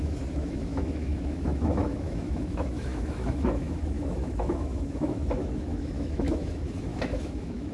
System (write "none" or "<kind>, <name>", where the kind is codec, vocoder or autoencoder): autoencoder, DAC-VAE